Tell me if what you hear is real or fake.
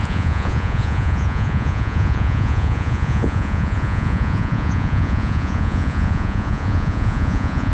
fake